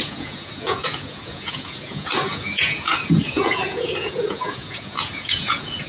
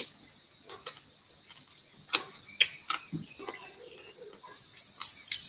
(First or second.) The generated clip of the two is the first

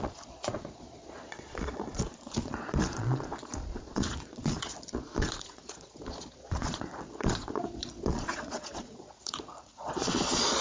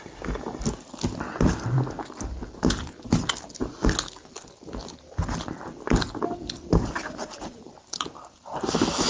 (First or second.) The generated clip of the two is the first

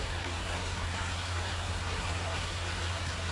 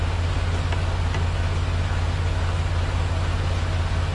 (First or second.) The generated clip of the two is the first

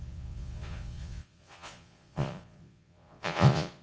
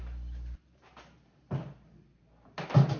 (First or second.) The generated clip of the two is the first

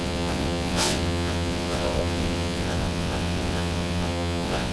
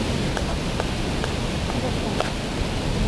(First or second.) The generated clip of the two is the first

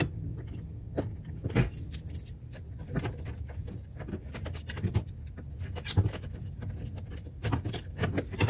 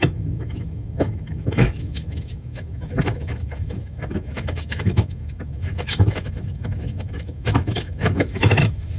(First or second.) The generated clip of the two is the second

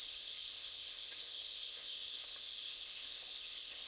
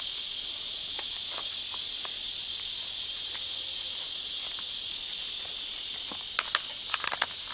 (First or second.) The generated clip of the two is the first